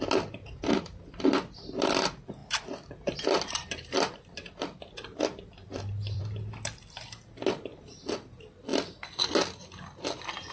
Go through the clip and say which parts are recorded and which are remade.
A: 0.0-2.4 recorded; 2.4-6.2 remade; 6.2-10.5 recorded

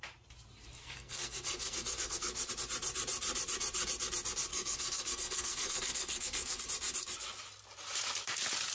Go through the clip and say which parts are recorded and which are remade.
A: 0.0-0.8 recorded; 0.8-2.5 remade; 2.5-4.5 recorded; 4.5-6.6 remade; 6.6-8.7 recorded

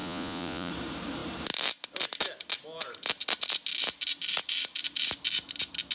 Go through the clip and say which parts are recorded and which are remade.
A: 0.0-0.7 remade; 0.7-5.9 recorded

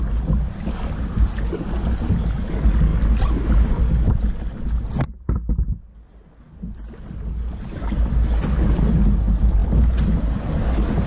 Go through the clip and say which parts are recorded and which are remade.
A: 0.0-11.1 recorded